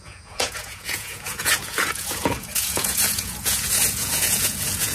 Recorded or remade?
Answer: remade